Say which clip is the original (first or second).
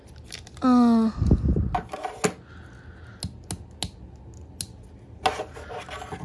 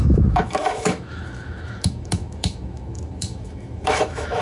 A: first